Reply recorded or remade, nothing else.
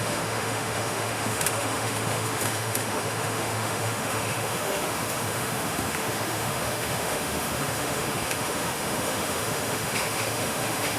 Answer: remade